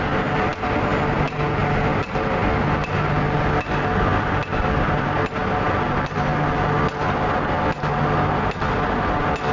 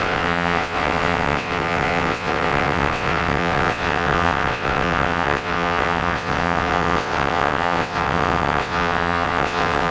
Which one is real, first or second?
first